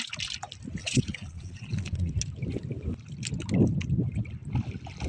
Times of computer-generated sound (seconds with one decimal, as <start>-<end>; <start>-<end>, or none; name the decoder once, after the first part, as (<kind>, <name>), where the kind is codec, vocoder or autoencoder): 0.8-2.1 (vocoder, Vocos)